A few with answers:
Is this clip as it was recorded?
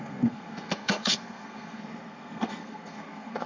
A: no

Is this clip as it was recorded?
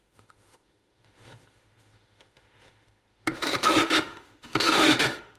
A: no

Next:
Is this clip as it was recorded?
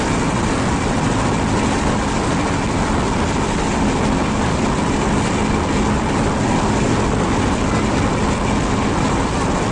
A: yes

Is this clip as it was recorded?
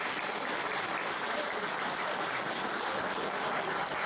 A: yes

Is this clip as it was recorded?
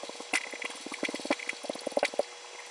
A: yes